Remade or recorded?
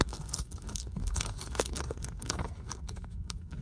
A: remade